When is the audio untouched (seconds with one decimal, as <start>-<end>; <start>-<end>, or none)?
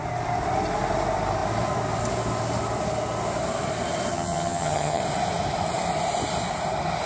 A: 0.0-4.1; 5.0-7.1